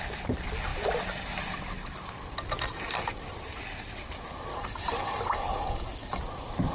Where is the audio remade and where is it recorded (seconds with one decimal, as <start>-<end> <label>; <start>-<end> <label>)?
0.0-4.5 recorded; 4.5-6.2 remade; 6.2-6.7 recorded